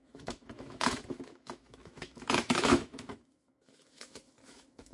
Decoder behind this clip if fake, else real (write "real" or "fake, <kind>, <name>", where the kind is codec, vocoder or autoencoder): fake, autoencoder, DAC-VAE